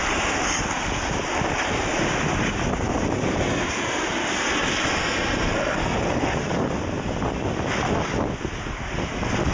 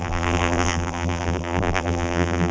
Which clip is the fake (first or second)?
second